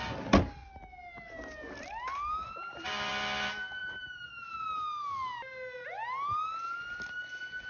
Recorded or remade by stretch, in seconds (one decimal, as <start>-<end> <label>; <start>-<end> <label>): 0.0-3.8 recorded; 3.8-4.3 remade; 4.3-7.7 recorded